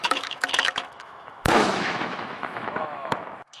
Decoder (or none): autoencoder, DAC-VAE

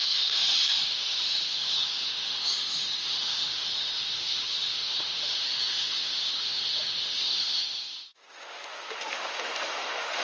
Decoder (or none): autoencoder, DAC-VAE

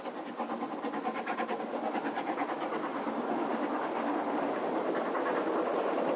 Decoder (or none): none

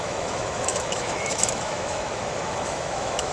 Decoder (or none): autoencoder, DAC-VAE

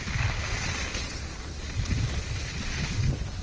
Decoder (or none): none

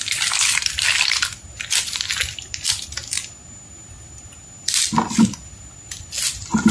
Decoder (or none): none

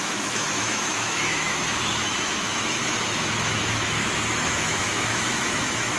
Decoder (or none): autoencoder, DAC-VAE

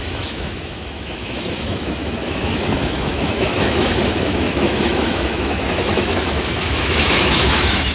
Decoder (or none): autoencoder, DAC-VAE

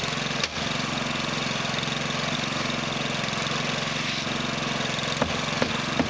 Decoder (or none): none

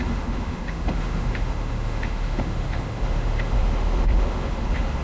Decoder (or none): autoencoder, DAC-VAE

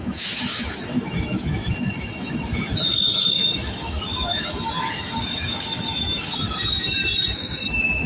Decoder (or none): autoencoder, DAC-VAE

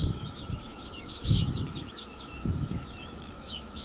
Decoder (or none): autoencoder, DAC-VAE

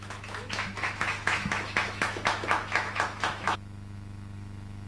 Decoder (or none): autoencoder, DAC-VAE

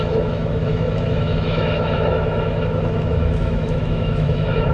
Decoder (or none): autoencoder, DAC-VAE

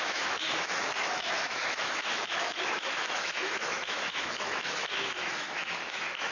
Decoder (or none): autoencoder, DAC-VAE